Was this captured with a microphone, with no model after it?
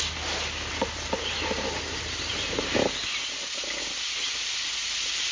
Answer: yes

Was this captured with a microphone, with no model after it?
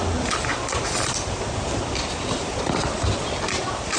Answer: yes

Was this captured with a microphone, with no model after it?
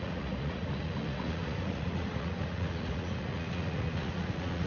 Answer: no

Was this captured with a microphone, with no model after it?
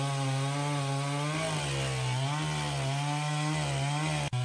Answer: yes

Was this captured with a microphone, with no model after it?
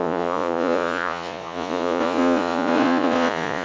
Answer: no